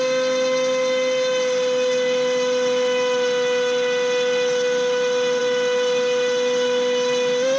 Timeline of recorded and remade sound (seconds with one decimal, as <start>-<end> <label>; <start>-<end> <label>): 0.0-7.6 recorded